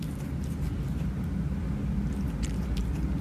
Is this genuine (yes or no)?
yes